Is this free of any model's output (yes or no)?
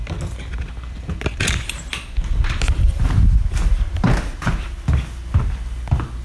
yes